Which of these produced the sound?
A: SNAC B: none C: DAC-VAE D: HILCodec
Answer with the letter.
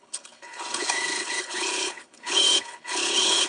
D